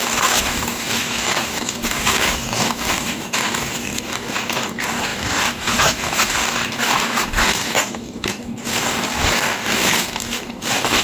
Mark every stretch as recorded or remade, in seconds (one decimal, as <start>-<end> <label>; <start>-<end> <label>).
0.0-11.0 remade

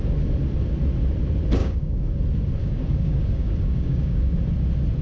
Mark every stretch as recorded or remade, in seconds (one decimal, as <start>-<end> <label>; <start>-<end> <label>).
0.0-1.6 recorded; 1.6-2.2 remade; 2.2-2.6 recorded; 2.6-4.4 remade; 4.4-5.0 recorded

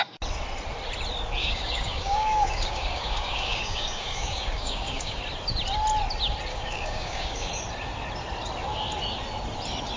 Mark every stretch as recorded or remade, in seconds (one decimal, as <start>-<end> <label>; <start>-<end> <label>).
0.0-1.4 recorded; 1.4-5.2 remade; 5.2-6.5 recorded; 6.5-7.5 remade; 7.5-10.0 recorded

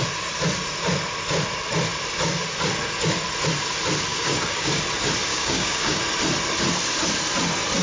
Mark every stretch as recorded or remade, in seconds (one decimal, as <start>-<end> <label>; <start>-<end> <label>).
0.0-4.1 recorded; 4.1-4.8 remade; 4.8-5.3 recorded; 5.3-6.0 remade; 6.0-7.8 recorded

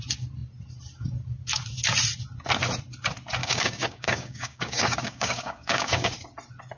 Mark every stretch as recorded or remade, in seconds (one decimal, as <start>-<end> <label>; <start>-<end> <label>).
0.0-3.4 recorded; 3.4-6.1 remade; 6.1-6.8 recorded